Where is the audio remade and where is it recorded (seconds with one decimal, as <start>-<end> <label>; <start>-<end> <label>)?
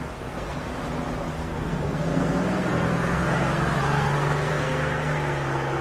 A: 0.0-0.7 remade; 0.7-1.3 recorded; 1.3-5.8 remade